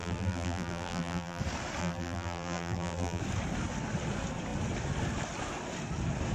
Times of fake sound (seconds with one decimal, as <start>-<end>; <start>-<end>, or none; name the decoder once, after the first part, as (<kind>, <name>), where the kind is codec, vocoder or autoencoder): 0.0-1.4 (vocoder, BigVGAN v2); 1.8-3.2